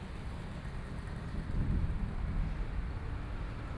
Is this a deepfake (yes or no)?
yes